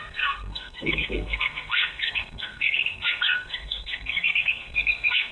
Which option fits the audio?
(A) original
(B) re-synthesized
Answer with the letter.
B